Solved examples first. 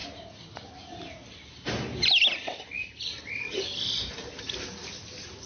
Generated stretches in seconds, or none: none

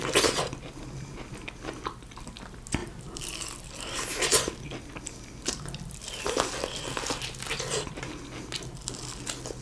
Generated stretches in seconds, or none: none

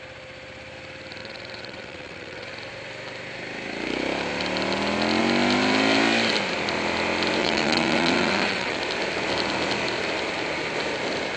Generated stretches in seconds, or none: 1.2-2.5 (vocoder, WaveNeXt); 7.4-8.8

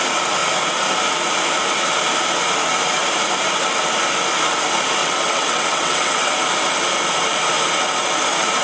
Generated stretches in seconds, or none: 5.0-6.3 (vocoder, WaveNeXt)